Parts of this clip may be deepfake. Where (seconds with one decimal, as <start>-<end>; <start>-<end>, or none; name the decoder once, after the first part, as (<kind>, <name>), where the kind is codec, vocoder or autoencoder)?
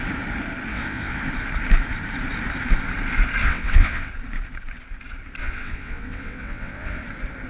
0.7-1.2 (vocoder, WaveNeXt); 3.4-4.1; 5.4-7.0